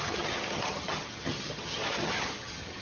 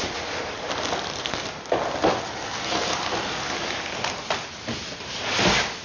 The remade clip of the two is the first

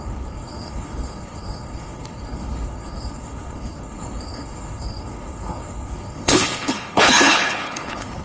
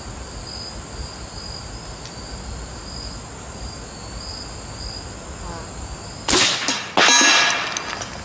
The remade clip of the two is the first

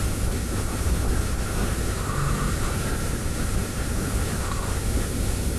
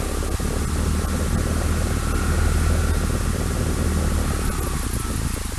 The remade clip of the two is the first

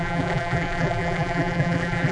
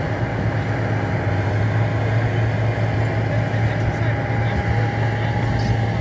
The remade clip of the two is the first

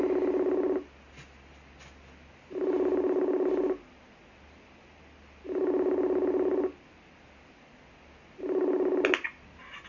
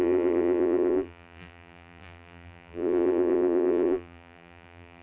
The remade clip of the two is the second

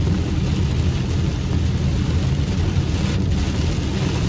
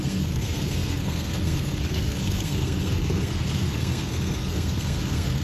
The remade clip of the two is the second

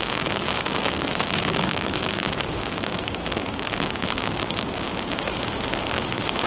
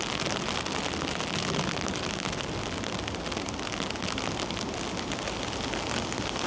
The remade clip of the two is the first